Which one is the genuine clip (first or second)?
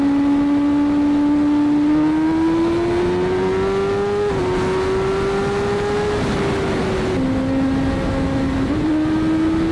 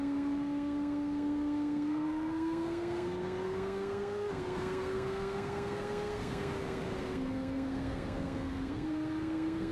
first